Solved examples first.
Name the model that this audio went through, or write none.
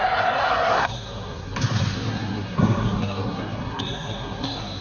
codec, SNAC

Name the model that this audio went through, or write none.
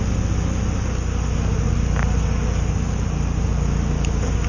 none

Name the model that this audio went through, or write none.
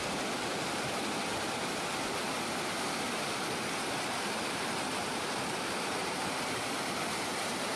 vocoder, BigVGAN v2